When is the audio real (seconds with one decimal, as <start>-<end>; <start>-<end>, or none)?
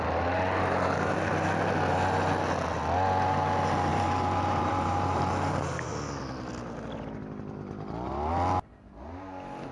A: 0.0-3.9; 5.3-9.7